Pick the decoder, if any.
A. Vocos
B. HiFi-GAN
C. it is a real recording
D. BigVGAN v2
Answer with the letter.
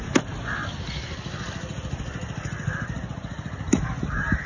C